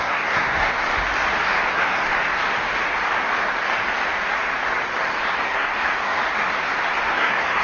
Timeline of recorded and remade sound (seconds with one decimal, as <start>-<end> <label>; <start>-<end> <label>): 0.0-0.9 remade; 0.9-1.7 recorded; 1.7-2.1 remade; 2.1-5.4 recorded; 5.4-6.2 remade; 6.2-7.0 recorded; 7.0-7.6 remade